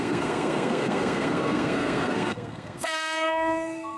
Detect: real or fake fake